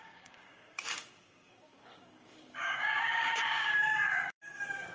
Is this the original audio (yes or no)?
no